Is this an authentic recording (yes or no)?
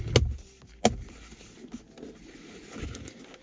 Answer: yes